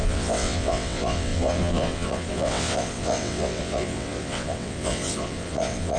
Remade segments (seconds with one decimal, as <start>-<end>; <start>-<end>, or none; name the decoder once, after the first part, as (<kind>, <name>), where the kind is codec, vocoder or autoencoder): 0.0-6.0 (vocoder, WaveNeXt)